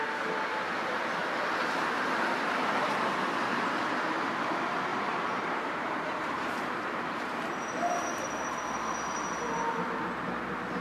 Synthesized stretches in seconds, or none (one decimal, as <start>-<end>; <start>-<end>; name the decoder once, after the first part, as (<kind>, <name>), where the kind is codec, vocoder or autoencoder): 4.9-8.6 (vocoder, BigVGAN v2)